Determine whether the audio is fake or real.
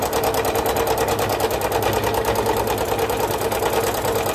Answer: real